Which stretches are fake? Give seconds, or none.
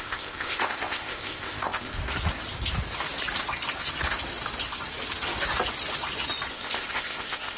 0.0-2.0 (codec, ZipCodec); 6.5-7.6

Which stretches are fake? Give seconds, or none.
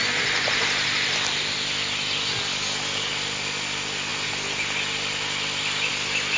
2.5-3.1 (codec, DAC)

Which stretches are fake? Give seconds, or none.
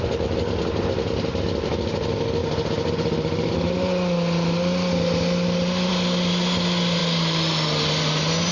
none